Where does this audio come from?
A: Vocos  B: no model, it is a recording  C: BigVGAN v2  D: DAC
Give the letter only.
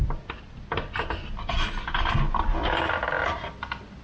B